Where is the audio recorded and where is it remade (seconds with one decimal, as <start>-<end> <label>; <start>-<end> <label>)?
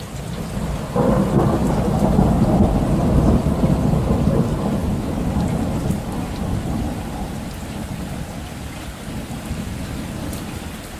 0.0-4.8 recorded; 4.8-9.3 remade; 9.3-11.0 recorded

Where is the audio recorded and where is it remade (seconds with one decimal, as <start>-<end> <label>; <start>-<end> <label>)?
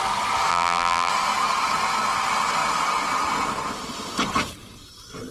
0.0-0.5 recorded; 0.5-1.1 remade; 1.1-5.3 recorded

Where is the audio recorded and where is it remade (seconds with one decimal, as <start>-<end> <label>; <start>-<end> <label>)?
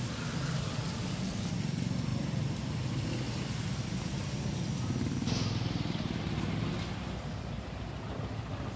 0.0-8.8 recorded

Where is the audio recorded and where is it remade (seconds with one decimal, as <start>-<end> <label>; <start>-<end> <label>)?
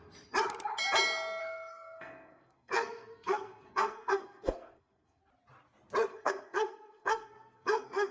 0.0-1.4 recorded; 1.4-5.2 remade; 5.2-6.1 recorded; 6.1-8.1 remade